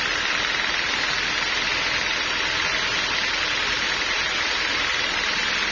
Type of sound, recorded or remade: recorded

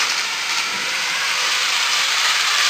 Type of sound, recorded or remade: remade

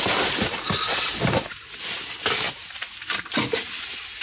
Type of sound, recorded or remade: recorded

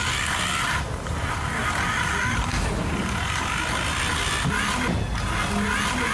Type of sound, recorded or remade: recorded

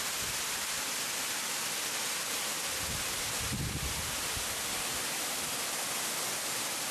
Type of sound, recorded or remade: recorded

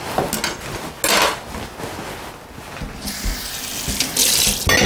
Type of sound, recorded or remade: recorded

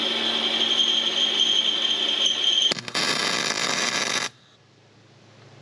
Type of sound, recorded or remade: recorded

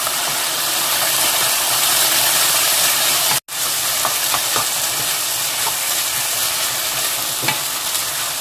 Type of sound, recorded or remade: recorded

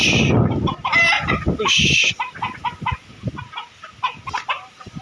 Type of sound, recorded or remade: recorded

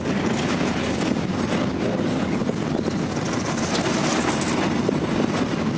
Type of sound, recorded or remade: recorded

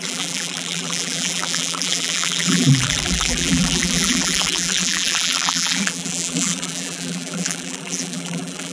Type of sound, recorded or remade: remade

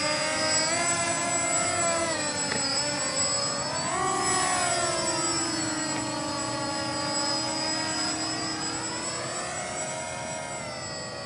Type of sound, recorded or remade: recorded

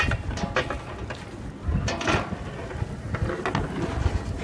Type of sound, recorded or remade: recorded